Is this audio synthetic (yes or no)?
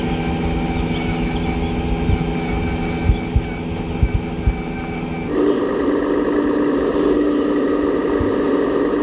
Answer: no